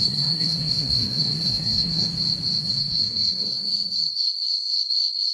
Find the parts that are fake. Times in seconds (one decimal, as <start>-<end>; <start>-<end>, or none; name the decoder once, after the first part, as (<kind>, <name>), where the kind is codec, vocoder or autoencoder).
0.0-2.1 (codec, SNAC); 2.6-5.3